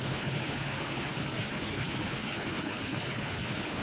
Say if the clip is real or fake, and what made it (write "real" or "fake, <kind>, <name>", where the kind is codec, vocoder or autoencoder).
fake, codec, HILCodec